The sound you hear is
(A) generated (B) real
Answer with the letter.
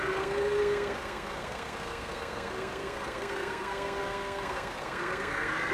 A